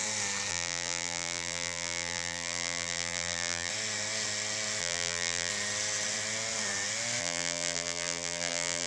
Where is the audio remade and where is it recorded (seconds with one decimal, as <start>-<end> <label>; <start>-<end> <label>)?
0.0-0.5 recorded; 0.5-3.7 remade; 3.7-4.8 recorded; 4.8-5.5 remade; 5.5-7.2 recorded; 7.2-8.9 remade